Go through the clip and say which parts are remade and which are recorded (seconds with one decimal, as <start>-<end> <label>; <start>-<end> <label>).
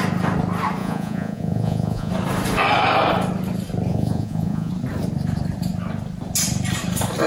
0.0-0.8 recorded; 0.8-2.1 remade; 2.1-3.9 recorded; 3.9-4.7 remade; 4.7-7.3 recorded